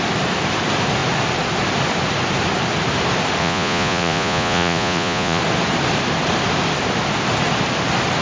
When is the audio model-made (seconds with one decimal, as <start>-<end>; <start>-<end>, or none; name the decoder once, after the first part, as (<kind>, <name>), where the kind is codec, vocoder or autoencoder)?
3.4-5.4 (vocoder, Vocos)